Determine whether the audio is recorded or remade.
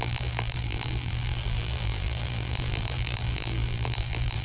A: remade